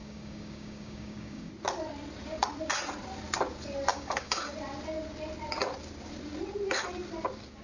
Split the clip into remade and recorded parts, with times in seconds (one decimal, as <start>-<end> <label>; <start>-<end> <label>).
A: 0.0-1.5 remade; 1.5-3.9 recorded; 3.9-4.4 remade; 4.4-7.6 recorded